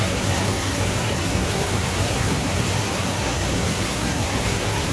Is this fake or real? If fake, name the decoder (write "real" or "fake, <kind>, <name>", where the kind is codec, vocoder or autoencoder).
fake, codec, SNAC